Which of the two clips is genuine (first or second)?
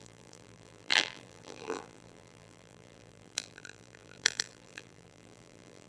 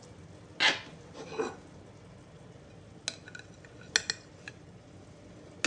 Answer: second